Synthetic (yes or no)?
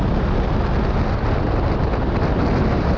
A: no